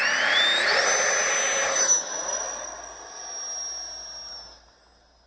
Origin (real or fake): real